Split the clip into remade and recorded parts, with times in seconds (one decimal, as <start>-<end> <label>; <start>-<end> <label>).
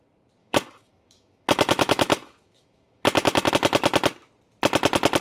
0.0-0.4 recorded; 0.4-3.5 remade; 3.5-5.2 recorded